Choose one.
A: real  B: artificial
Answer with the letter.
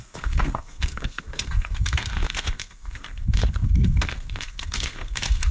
B